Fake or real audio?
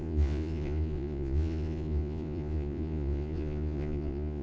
fake